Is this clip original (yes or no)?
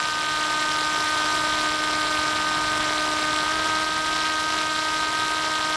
yes